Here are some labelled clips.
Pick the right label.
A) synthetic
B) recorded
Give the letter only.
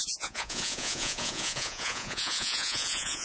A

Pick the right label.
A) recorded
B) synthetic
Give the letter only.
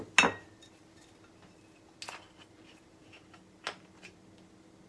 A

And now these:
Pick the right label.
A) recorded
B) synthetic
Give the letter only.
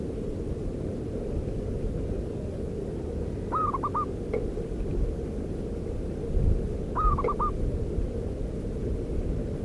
A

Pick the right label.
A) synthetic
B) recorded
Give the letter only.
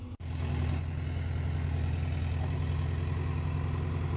B